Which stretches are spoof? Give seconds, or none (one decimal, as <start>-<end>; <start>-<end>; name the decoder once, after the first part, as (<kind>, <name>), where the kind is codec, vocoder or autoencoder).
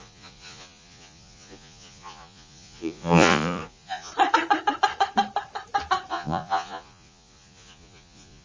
0.0-4.1 (vocoder, Vocos); 6.1-8.4